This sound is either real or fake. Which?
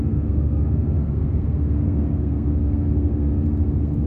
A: fake